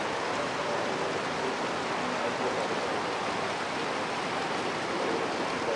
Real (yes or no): yes